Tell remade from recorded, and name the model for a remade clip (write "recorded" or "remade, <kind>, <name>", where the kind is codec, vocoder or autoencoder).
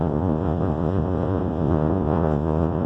remade, vocoder, Vocos